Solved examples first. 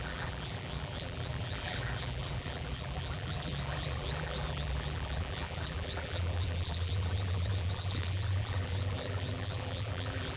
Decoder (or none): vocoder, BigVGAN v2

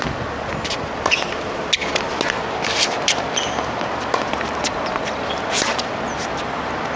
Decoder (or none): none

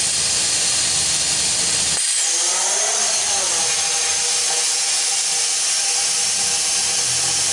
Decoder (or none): none